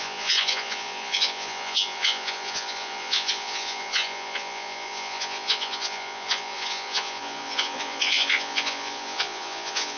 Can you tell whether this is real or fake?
fake